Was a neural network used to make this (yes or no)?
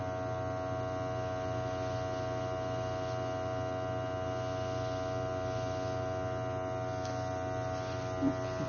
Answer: no